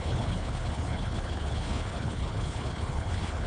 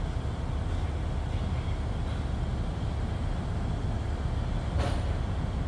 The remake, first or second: first